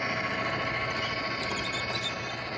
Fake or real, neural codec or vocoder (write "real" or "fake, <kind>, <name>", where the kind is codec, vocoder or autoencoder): real